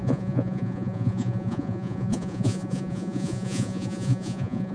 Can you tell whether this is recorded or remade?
remade